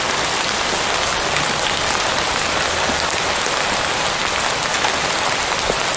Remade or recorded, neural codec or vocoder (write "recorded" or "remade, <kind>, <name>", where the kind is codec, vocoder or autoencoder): recorded